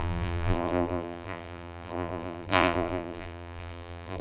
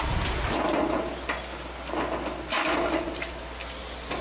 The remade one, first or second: first